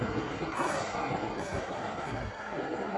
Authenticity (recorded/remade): remade